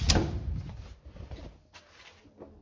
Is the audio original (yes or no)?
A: yes